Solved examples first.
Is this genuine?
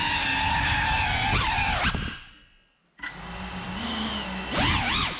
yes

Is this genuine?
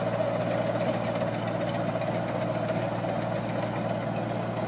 yes